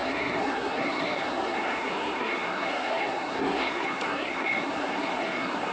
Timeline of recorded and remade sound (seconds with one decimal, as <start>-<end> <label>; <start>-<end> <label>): 0.0-5.7 remade